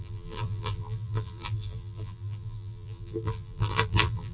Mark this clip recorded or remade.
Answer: remade